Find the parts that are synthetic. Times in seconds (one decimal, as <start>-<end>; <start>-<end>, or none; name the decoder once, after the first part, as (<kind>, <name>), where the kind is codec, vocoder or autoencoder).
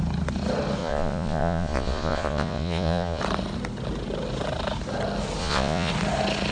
0.8-3.2 (vocoder, Vocos); 5.4-5.9